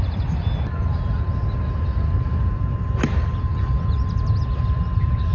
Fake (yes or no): no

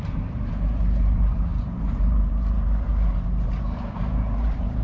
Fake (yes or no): yes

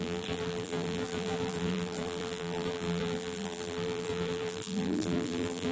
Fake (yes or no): yes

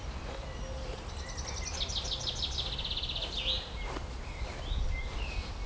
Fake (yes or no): no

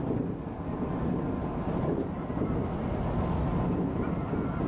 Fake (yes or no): no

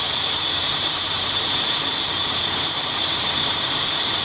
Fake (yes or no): yes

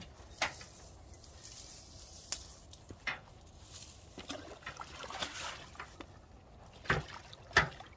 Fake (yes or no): no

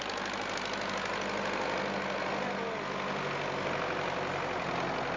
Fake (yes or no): no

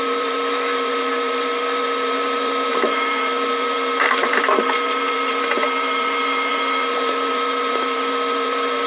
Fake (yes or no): yes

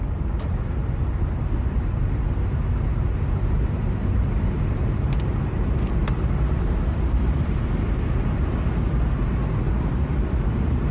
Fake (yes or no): no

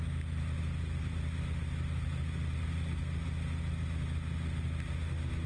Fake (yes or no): no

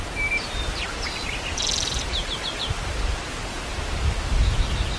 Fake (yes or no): no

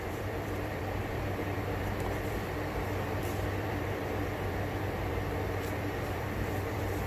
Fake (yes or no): yes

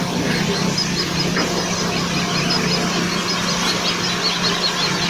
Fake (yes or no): no